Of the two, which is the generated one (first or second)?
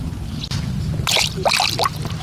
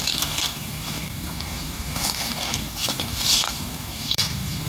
second